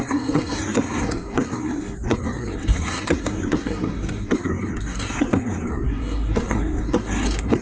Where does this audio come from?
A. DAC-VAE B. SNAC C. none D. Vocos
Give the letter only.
B